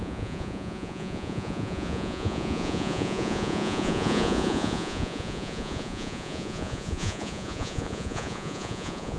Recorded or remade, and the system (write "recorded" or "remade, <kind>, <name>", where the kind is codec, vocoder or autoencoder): remade, vocoder, Vocos